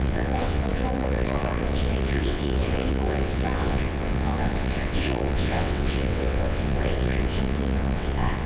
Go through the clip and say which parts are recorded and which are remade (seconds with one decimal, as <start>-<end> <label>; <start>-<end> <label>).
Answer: 0.0-8.5 remade

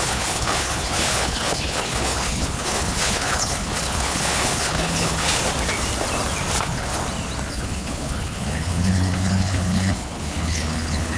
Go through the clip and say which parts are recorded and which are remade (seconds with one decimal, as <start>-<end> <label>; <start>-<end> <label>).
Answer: 0.0-5.4 remade; 5.4-6.6 recorded; 6.6-7.0 remade; 7.0-7.5 recorded; 7.5-11.2 remade

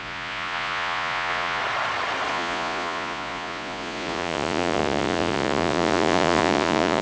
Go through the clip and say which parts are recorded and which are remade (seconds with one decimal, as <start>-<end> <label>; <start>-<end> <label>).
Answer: 0.0-1.6 remade; 1.6-2.3 recorded; 2.3-7.0 remade

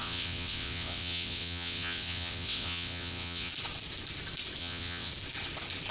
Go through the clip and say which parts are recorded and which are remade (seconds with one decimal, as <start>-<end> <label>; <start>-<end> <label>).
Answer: 0.0-3.5 remade; 3.5-4.6 recorded; 4.6-5.1 remade; 5.1-5.9 recorded

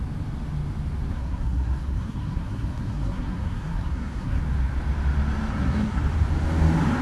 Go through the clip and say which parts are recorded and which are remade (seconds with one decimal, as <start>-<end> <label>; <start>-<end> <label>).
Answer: 0.0-1.1 recorded; 1.1-4.4 remade; 4.4-5.5 recorded; 5.5-6.0 remade; 6.0-7.0 recorded